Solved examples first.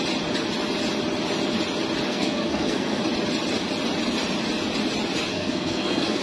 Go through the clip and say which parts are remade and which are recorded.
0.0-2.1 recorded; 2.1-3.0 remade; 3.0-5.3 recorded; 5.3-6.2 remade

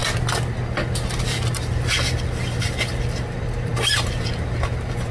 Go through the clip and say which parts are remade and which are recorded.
0.0-5.1 recorded

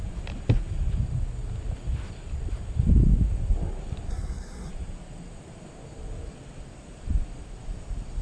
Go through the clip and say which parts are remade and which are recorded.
0.0-4.1 recorded; 4.1-4.7 remade; 4.7-8.2 recorded